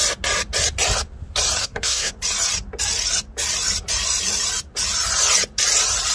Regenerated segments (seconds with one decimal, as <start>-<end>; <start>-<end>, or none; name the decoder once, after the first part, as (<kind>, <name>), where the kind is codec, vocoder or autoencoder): 1.6-2.1 (codec, SNAC)